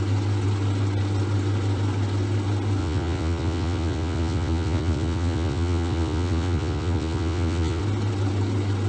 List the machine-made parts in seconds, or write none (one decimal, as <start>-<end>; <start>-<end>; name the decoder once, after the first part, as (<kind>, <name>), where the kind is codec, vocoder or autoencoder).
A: 2.8-7.8 (vocoder, Vocos)